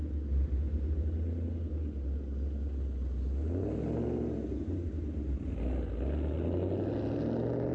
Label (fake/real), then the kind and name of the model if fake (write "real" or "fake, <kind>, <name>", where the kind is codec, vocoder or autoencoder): real